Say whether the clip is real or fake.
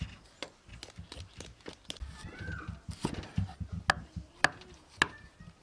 real